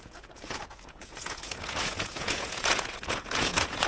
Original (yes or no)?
no